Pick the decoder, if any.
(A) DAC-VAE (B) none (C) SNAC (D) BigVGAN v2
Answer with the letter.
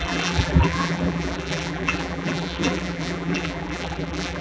D